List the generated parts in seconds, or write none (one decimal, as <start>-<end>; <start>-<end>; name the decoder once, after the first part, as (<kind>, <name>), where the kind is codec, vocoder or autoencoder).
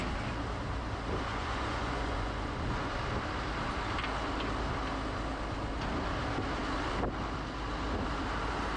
1.3-2.9 (vocoder, Vocos)